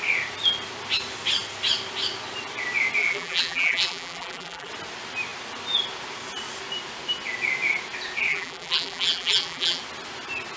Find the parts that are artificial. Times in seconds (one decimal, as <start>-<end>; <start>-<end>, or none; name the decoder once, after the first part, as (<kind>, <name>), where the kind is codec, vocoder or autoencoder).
3.0-4.7 (vocoder, BigVGAN v2); 8.3-9.8